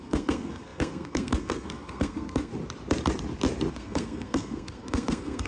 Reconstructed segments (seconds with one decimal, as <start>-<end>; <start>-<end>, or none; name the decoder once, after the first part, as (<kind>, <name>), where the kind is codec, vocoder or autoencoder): 0.0-2.5 (codec, SNAC); 3.7-5.5